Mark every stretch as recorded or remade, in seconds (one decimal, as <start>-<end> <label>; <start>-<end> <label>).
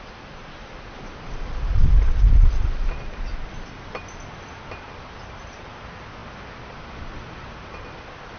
0.0-8.4 recorded